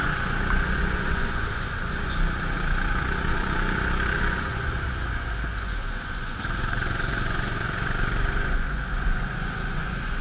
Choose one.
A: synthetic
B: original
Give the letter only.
A